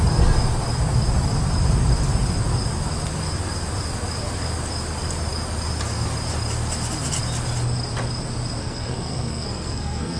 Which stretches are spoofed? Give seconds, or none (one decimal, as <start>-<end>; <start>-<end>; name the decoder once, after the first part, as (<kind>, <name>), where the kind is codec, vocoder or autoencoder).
8.6-10.2 (codec, SNAC)